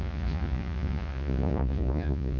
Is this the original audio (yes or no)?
no